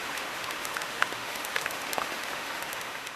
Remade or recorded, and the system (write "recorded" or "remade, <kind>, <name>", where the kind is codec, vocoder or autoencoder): remade, autoencoder, DAC-VAE